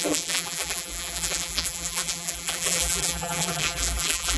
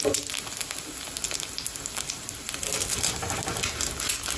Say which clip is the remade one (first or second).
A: first